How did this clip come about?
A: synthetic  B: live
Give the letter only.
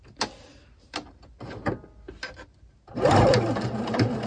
B